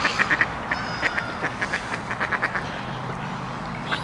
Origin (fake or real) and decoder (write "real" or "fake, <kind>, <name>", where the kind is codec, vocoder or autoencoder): real